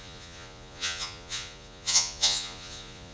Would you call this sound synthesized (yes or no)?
yes